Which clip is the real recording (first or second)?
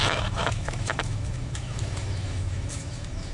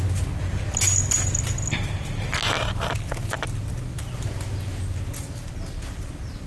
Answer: second